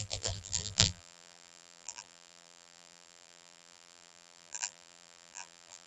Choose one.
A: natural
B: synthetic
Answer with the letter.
B